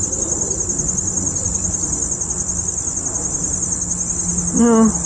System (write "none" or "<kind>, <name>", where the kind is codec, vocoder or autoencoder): none